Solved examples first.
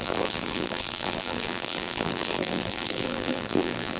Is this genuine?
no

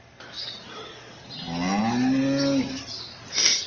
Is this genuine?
yes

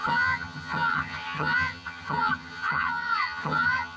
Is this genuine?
no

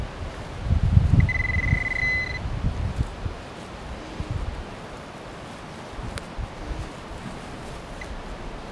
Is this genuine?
yes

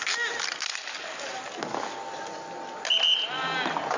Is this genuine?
yes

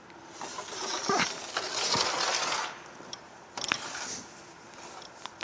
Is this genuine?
yes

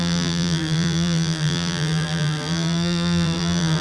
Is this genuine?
no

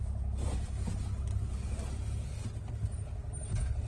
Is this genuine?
yes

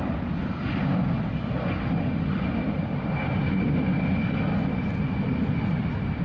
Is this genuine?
yes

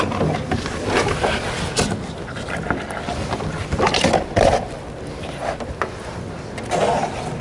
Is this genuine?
yes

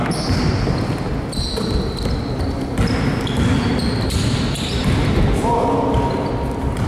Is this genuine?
yes